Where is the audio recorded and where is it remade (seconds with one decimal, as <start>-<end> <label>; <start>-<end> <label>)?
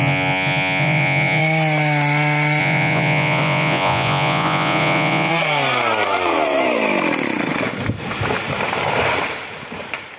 0.0-1.4 remade; 1.4-2.6 recorded; 2.6-5.3 remade; 5.3-10.2 recorded